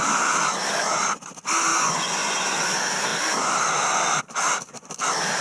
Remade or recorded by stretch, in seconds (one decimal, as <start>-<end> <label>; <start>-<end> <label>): 0.0-1.7 recorded; 1.7-2.6 remade; 2.6-5.4 recorded